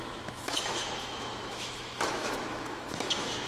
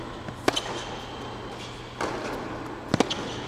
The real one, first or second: second